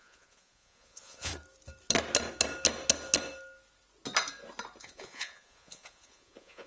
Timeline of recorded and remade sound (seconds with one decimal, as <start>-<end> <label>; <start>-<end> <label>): 0.0-1.3 remade; 1.3-4.8 recorded; 4.8-6.7 remade